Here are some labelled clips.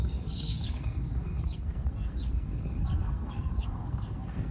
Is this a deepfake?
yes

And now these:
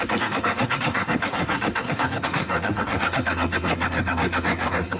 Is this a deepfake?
yes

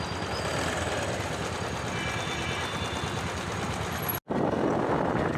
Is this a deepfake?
no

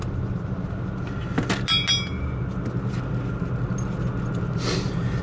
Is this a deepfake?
no